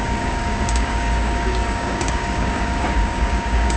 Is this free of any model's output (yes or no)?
no